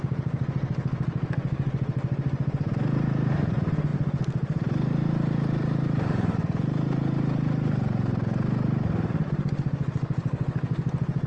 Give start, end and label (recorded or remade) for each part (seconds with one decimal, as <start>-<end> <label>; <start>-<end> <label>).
0.0-11.3 recorded